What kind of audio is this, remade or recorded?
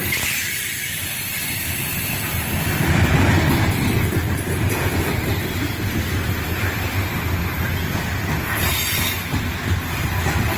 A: remade